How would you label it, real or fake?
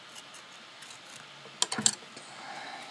real